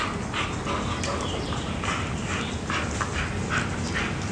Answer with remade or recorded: recorded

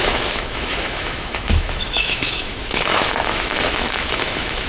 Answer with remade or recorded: remade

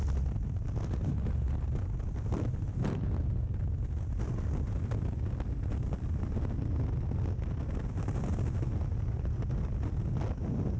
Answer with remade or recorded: recorded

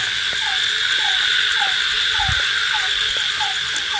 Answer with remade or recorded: recorded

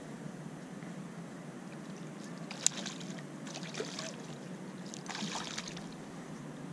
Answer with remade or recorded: recorded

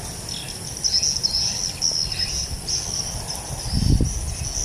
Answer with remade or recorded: recorded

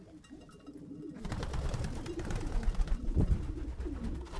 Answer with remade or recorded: recorded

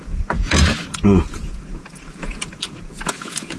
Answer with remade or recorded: remade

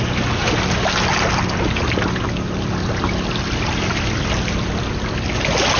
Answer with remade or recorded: recorded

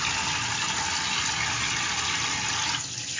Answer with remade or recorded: recorded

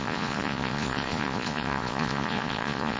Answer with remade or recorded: remade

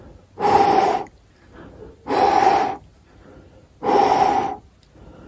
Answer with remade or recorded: recorded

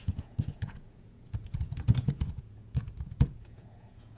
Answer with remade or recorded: remade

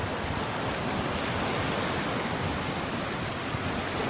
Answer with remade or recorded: recorded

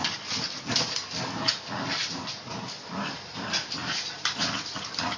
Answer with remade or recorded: remade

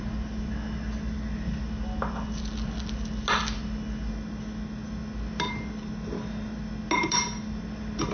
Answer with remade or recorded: recorded